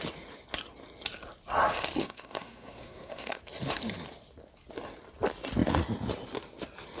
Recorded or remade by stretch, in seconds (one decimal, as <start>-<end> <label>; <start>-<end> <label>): 0.0-2.0 recorded; 2.0-3.4 remade; 3.4-7.0 recorded